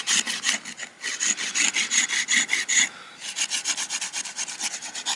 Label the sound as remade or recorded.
recorded